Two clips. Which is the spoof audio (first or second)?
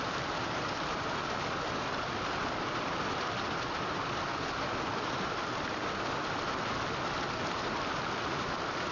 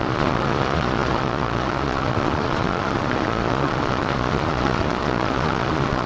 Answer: second